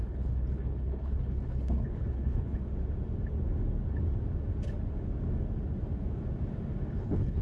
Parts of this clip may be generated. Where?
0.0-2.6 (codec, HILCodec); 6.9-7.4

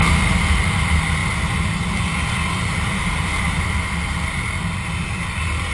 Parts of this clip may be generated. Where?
none

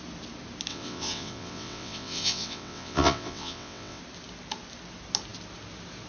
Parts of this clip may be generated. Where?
0.7-4.0 (vocoder, WaveNeXt)

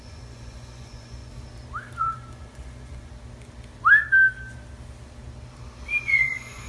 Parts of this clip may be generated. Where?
0.0-1.3 (vocoder, Vocos); 2.0-3.1; 6.0-6.7

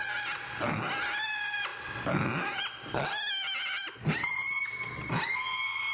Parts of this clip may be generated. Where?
none

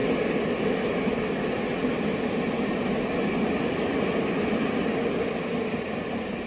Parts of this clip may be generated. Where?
none

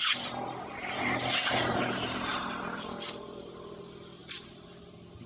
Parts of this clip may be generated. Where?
none